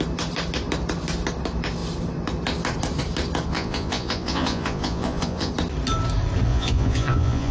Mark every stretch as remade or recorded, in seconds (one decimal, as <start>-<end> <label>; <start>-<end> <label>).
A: 0.0-3.5 recorded; 3.5-5.5 remade; 5.5-6.5 recorded; 6.5-7.5 remade